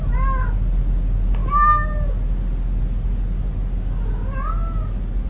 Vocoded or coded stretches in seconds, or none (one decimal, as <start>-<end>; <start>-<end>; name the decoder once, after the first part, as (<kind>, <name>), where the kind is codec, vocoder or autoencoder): none